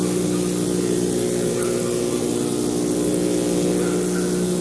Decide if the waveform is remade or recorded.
recorded